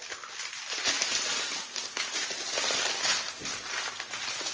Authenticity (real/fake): real